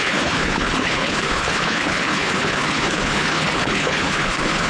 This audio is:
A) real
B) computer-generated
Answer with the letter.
B